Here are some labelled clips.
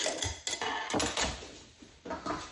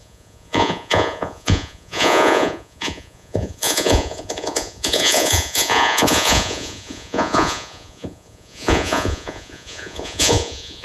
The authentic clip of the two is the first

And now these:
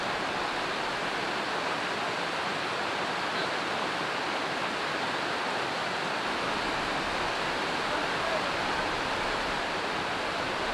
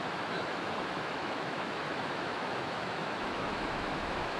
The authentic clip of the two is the first